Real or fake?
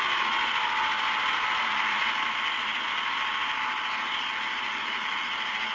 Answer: fake